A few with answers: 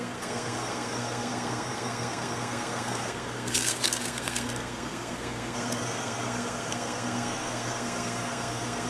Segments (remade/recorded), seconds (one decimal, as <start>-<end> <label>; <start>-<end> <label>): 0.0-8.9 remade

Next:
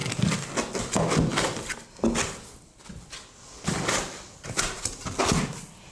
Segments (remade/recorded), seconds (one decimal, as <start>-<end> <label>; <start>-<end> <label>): 0.0-5.9 recorded

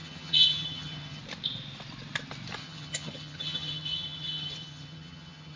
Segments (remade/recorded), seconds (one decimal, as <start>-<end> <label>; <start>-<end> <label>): 0.0-1.2 remade; 1.2-2.6 recorded; 2.6-5.6 remade